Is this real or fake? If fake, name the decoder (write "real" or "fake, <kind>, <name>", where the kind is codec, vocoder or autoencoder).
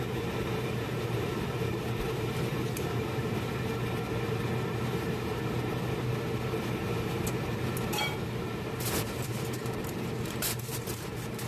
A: fake, vocoder, BigVGAN v2